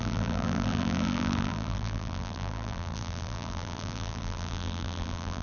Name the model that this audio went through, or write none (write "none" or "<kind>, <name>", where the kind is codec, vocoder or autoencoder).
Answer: vocoder, BigVGAN v2